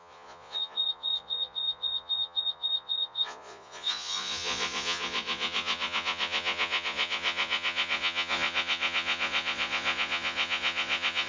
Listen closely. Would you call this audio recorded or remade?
remade